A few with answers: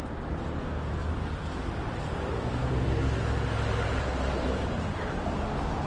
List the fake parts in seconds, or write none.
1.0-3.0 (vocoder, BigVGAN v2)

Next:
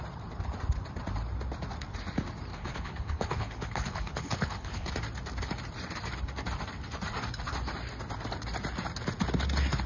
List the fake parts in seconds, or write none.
2.5-4.9 (codec, HILCodec)

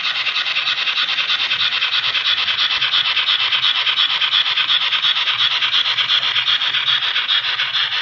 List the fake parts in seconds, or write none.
4.6-5.5 (vocoder, BigVGAN v2)

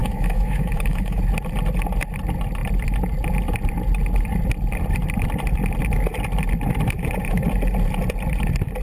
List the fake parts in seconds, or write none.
0.0-1.2 (autoencoder, DAC-VAE)

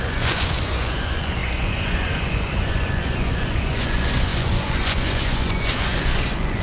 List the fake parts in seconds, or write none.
0.0-6.6 (vocoder, Vocos)

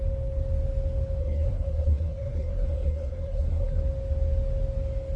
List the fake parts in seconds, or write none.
1.2-3.8 (codec, SNAC)